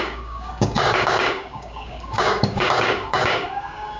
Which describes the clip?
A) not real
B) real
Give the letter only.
A